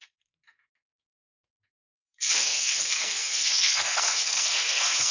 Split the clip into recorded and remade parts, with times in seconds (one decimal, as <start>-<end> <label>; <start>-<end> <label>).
0.0-5.1 remade